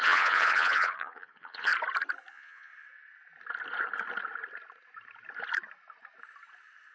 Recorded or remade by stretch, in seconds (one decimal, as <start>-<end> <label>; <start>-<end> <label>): 0.0-1.7 remade; 1.7-2.3 recorded; 2.3-2.7 remade; 2.7-6.9 recorded